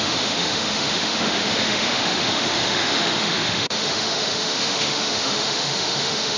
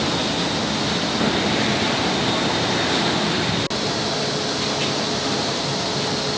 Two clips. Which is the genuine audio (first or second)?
second